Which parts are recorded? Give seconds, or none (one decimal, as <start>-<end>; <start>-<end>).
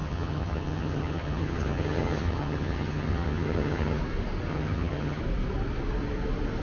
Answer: 4.0-4.5; 5.2-6.6